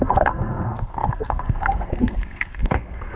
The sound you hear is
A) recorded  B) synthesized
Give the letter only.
B